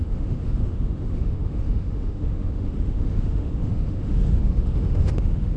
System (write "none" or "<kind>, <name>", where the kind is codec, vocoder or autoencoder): autoencoder, DAC-VAE